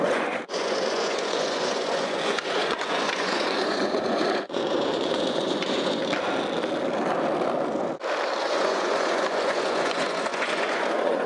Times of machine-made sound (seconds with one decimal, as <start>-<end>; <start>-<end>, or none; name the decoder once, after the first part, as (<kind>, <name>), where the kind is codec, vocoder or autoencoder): 0.0-6.0 (vocoder, Vocos); 8.4-11.3